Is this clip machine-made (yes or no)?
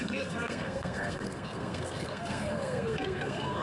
yes